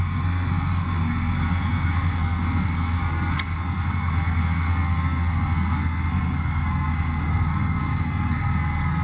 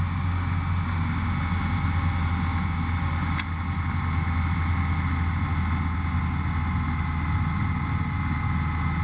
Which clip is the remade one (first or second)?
first